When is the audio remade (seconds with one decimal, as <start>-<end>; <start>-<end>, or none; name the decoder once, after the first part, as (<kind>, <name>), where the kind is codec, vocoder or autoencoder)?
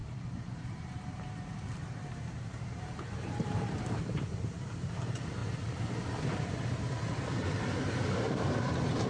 0.0-5.4 (vocoder, BigVGAN v2); 6.2-9.1